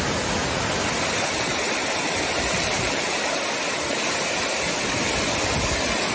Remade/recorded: recorded